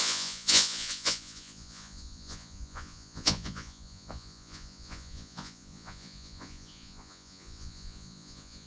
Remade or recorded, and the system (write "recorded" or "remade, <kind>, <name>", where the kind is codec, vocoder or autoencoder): remade, vocoder, Vocos